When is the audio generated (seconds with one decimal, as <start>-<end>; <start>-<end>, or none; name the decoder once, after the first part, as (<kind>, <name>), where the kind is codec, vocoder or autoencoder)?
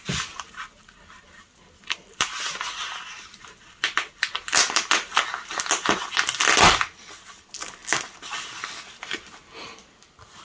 none